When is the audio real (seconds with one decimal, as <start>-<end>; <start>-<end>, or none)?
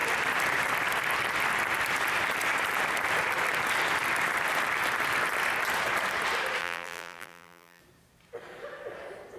0.0-6.6; 7.8-9.4